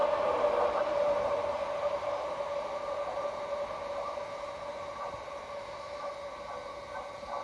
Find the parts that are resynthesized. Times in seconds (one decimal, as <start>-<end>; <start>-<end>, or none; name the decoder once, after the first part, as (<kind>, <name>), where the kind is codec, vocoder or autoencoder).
5.4-6.1 (autoencoder, DAC-VAE)